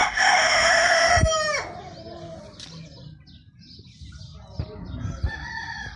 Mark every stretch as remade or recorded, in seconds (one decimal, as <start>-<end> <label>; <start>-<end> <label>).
0.0-1.1 remade; 1.1-6.0 recorded